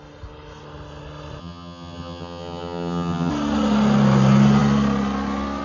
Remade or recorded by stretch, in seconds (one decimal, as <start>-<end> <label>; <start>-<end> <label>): 0.0-1.4 recorded; 1.4-3.3 remade; 3.3-5.6 recorded